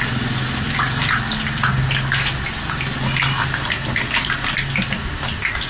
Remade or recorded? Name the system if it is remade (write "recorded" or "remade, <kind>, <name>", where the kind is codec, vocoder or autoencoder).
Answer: recorded